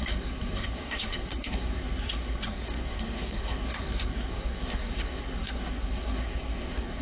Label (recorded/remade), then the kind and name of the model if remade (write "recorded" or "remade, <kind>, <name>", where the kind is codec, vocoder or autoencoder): remade, codec, SNAC